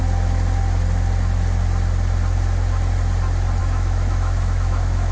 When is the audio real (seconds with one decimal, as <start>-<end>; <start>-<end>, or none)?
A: 0.0-3.6